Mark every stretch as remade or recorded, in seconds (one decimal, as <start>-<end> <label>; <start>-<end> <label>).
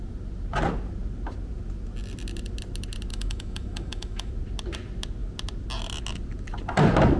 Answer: 0.0-3.1 recorded; 3.1-4.3 remade; 4.3-7.2 recorded